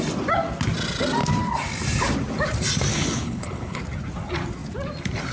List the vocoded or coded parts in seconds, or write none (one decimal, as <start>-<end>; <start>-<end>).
2.9-3.8